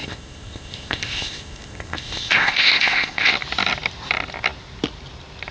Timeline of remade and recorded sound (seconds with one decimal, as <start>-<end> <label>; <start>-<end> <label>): 0.0-3.3 remade; 3.3-5.5 recorded